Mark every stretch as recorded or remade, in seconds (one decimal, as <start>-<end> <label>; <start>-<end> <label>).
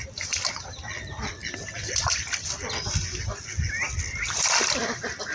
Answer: 0.0-5.3 recorded